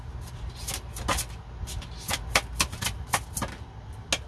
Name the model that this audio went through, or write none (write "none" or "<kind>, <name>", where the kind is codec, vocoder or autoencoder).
none